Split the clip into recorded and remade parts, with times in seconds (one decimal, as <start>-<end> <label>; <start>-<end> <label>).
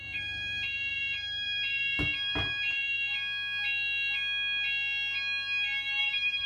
0.0-3.1 remade; 3.1-6.0 recorded; 6.0-6.5 remade